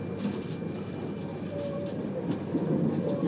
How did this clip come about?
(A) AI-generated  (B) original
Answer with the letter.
B